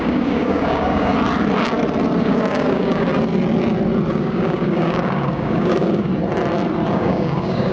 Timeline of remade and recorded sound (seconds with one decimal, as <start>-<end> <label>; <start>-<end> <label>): 0.0-1.1 remade; 1.1-2.2 recorded; 2.2-3.1 remade; 3.1-4.2 recorded; 4.2-6.1 remade; 6.1-6.9 recorded; 6.9-7.7 remade

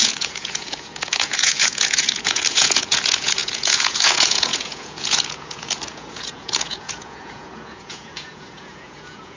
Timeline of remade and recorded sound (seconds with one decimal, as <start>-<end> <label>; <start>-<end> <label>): 0.0-9.4 remade